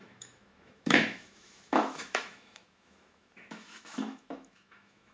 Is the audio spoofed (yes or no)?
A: yes